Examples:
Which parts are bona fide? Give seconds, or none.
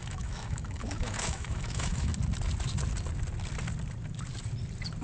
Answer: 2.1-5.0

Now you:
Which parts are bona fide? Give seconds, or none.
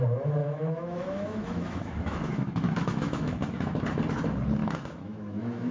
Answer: 0.0-0.4; 3.8-4.6